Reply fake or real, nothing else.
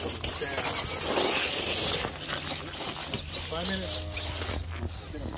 real